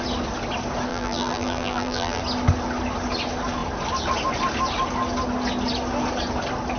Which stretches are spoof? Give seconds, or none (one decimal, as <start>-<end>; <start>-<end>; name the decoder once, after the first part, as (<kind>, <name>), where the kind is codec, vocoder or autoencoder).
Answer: 0.9-2.2 (vocoder, BigVGAN v2)